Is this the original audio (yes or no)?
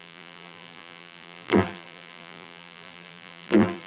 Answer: no